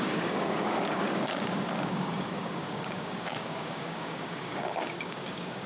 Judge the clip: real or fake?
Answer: fake